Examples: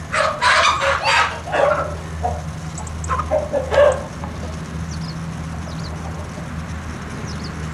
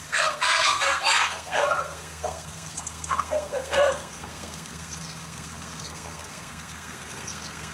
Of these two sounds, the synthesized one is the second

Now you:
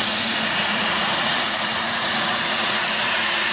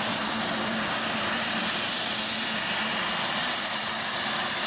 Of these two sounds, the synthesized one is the first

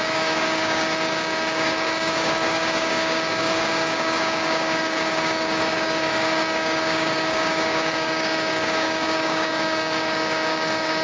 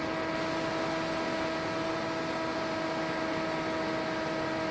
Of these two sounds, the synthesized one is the first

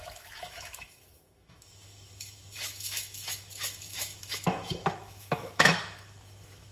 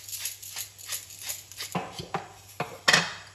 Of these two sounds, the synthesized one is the first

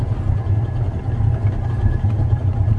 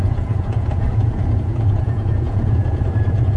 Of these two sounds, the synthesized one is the second